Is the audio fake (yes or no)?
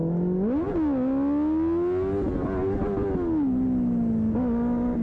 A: no